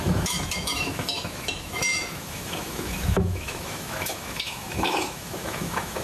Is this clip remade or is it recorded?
remade